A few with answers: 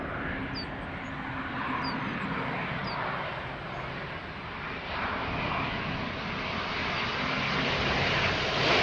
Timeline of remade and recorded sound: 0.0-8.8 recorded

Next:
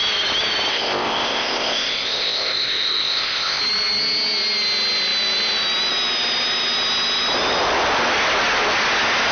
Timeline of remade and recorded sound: 0.0-0.7 recorded; 0.7-3.6 remade; 3.6-9.3 recorded

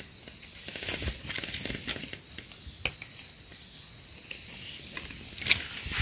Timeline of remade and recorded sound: 0.0-6.0 recorded